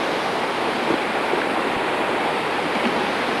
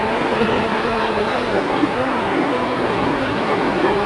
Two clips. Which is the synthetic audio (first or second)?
second